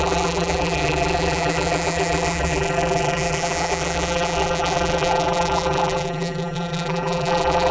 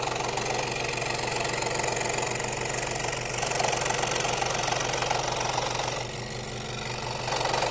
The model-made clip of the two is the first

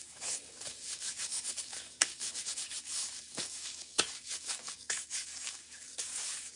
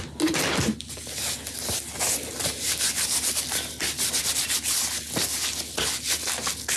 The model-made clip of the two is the first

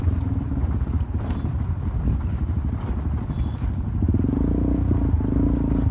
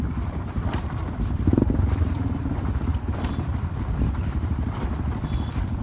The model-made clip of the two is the second